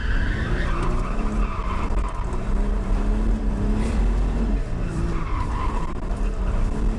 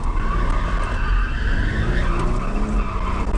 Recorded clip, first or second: second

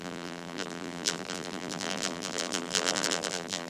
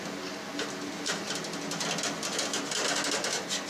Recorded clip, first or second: second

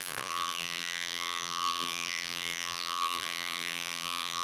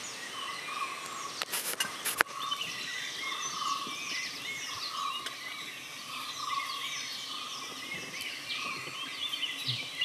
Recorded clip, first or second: second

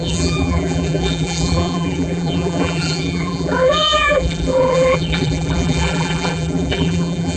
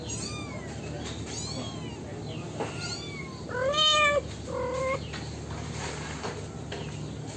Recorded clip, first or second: second